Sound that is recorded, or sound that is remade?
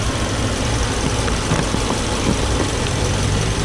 recorded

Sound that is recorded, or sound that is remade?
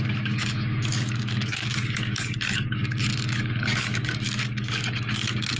remade